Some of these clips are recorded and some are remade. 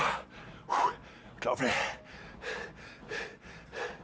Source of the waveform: recorded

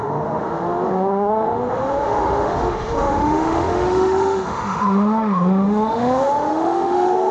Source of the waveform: remade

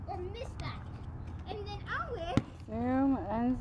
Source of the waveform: recorded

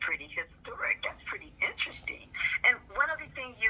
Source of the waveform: recorded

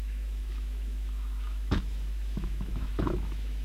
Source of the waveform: remade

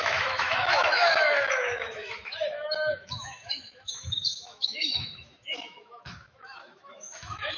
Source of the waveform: remade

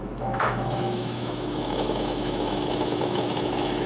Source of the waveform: remade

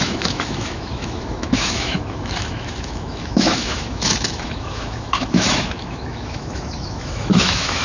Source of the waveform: remade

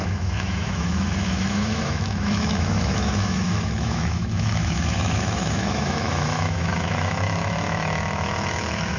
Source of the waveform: remade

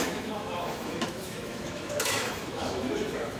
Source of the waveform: remade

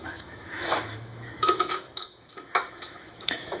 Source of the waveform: remade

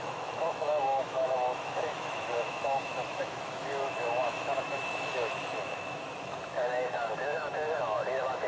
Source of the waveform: remade